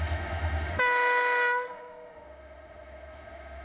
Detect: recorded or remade remade